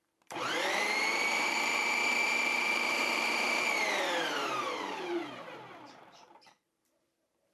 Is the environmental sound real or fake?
fake